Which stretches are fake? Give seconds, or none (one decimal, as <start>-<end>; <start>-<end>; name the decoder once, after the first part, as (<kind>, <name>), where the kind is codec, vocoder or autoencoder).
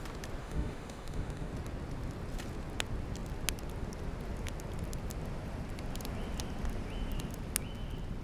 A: 0.4-1.5 (autoencoder, DAC-VAE)